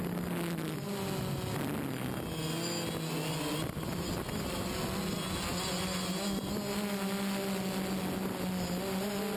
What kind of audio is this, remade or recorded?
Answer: recorded